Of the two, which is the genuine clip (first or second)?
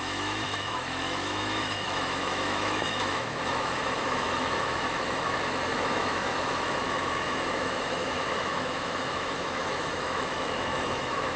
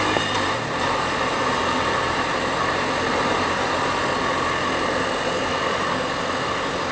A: second